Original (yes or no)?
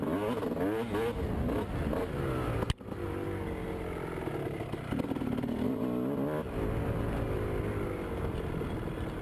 yes